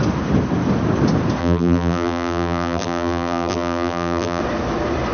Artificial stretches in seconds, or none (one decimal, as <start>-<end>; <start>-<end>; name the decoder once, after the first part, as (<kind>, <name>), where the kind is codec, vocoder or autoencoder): 1.4-4.4 (vocoder, BigVGAN v2)